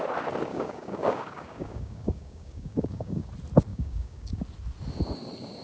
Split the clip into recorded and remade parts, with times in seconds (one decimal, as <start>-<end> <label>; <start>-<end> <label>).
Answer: 0.0-0.5 recorded; 0.5-3.3 remade; 3.3-3.7 recorded; 3.7-4.4 remade; 4.4-5.6 recorded